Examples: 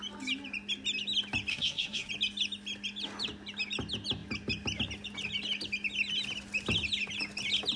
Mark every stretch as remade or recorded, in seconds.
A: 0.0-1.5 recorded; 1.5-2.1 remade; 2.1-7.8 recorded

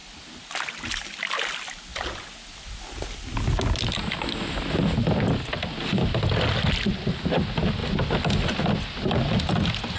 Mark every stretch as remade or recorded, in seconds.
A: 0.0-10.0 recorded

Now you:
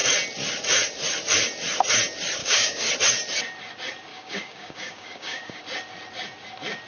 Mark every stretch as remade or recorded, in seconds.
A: 0.0-2.4 recorded; 2.4-2.9 remade; 2.9-4.1 recorded; 4.1-5.6 remade; 5.6-6.9 recorded